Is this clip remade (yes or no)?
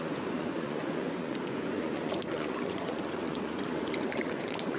yes